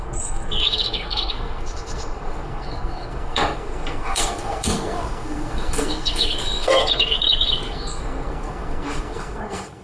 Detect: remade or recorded remade